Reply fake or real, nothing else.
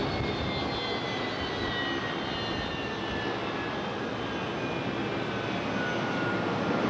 real